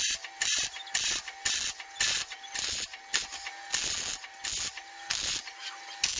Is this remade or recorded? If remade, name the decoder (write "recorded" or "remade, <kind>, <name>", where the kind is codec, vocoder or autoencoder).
recorded